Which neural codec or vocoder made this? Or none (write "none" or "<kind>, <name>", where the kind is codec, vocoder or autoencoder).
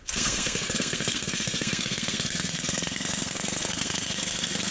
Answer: codec, SNAC